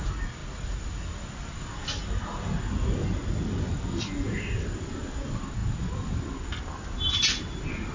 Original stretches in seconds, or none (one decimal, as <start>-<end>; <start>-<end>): 0.0-7.9